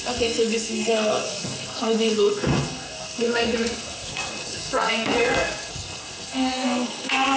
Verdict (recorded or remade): remade